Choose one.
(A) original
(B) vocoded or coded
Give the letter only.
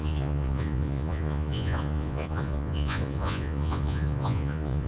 B